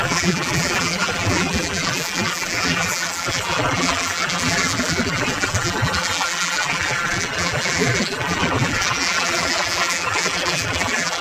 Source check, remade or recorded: remade